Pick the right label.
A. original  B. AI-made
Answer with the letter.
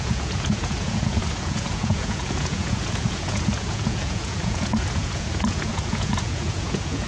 B